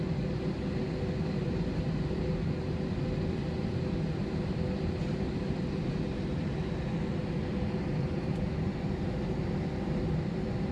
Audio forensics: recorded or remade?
recorded